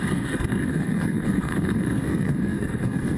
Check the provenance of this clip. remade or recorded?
remade